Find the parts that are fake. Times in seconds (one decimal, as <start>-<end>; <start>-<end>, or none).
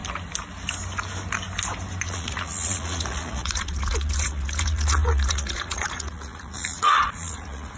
2.0-7.8